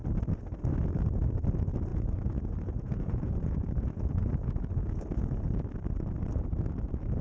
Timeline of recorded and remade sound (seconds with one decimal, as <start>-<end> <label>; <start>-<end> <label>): 0.0-1.9 recorded; 1.9-5.6 remade; 5.6-7.2 recorded